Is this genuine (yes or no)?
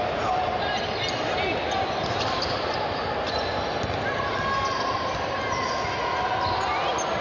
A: yes